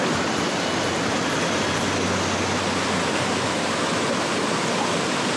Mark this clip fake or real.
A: real